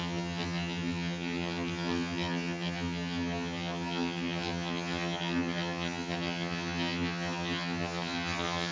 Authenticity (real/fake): fake